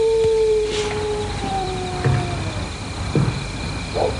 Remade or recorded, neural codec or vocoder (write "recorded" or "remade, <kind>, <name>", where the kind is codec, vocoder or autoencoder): remade, vocoder, BigVGAN v2